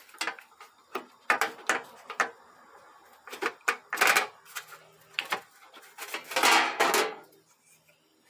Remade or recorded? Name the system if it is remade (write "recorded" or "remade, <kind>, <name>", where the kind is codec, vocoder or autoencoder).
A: recorded